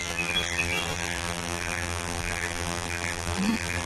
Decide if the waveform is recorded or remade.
remade